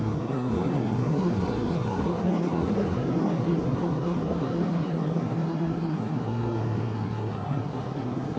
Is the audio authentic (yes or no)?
no